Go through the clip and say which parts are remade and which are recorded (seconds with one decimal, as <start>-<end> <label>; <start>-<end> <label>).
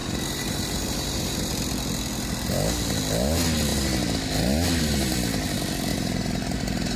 0.0-1.5 remade; 1.5-5.9 recorded; 5.9-7.0 remade